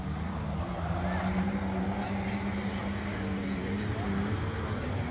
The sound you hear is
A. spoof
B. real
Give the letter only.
B